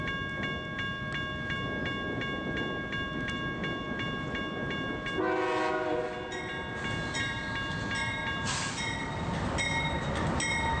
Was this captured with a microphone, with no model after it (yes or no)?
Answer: yes